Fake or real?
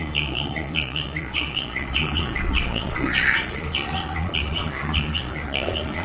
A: fake